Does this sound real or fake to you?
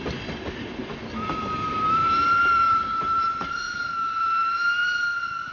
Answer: real